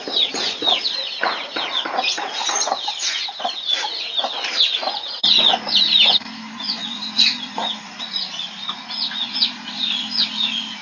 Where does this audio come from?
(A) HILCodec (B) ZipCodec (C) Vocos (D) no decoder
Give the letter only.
C